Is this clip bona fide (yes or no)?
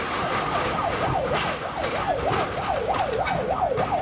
yes